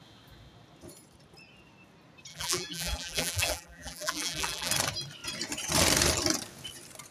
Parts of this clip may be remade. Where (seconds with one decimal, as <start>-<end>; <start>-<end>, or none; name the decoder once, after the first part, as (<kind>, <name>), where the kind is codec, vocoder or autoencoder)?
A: 2.3-4.7 (vocoder, BigVGAN v2)